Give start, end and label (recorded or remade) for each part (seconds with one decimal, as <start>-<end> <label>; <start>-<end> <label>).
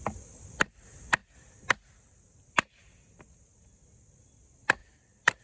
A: 0.0-1.2 recorded; 1.2-2.8 remade; 2.8-4.8 recorded; 4.8-5.4 remade